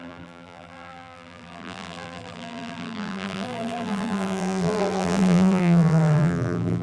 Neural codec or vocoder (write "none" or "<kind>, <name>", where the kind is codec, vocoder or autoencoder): vocoder, BigVGAN v2